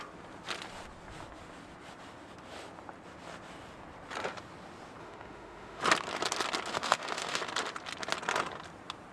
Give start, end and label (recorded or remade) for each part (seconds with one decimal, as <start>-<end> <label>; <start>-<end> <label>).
0.0-5.0 recorded; 5.0-5.8 remade; 5.8-6.7 recorded; 6.7-7.4 remade; 7.4-9.1 recorded